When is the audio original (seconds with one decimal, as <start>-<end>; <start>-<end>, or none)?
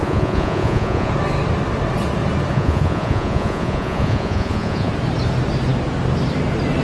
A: 1.1-2.5; 4.9-6.8